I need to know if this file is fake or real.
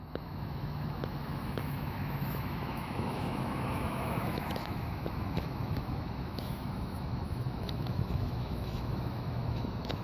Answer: fake